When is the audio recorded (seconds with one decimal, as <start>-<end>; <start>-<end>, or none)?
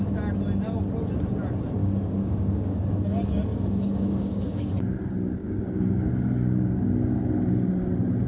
0.0-1.8; 2.7-3.5; 4.7-5.4; 6.1-8.3